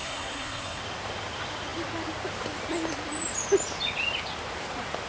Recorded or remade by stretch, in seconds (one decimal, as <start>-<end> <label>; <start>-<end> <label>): 0.0-0.8 remade; 0.8-5.1 recorded